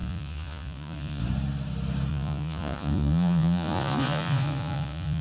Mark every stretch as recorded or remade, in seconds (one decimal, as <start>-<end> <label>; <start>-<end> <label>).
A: 0.0-1.2 remade; 1.2-2.1 recorded; 2.1-5.2 remade